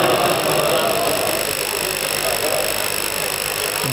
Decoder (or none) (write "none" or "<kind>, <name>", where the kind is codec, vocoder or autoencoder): none